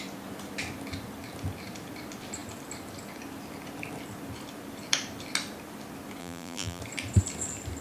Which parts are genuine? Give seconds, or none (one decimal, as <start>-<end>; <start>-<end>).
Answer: 0.0-6.2; 6.8-7.8